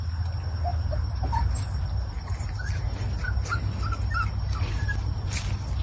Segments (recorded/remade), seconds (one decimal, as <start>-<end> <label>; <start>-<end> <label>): 0.0-5.8 recorded

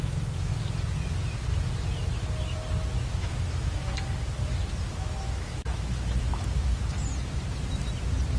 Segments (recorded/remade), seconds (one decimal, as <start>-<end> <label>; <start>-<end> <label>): 0.0-0.5 remade; 0.5-3.1 recorded; 3.1-3.8 remade; 3.8-4.9 recorded; 4.9-6.3 remade; 6.3-8.4 recorded

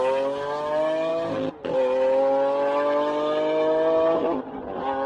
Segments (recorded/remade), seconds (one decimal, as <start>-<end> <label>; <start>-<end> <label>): 0.0-5.1 recorded